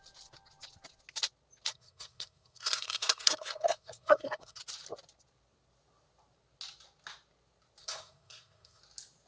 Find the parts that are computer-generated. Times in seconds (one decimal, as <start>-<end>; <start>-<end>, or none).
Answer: 1.7-4.6; 7.8-8.8